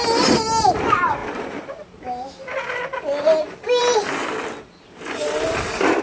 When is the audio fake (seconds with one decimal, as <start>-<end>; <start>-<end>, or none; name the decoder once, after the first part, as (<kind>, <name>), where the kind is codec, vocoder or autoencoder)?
none